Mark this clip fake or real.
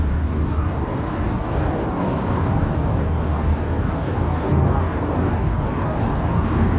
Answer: fake